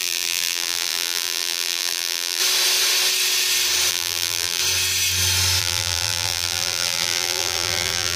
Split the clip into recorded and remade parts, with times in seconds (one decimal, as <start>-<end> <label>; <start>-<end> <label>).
0.0-2.4 remade; 2.4-3.9 recorded; 3.9-4.6 remade; 4.6-5.6 recorded; 5.6-8.2 remade